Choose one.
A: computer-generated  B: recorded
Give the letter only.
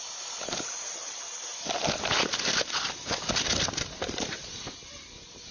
B